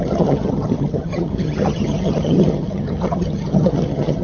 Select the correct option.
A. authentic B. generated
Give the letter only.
B